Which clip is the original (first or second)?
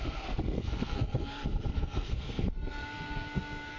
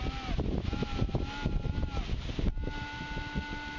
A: second